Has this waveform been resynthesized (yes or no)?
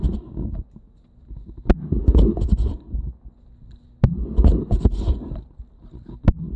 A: no